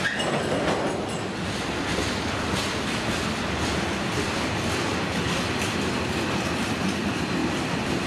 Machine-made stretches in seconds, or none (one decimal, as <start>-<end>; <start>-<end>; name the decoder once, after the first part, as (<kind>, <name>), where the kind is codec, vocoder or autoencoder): none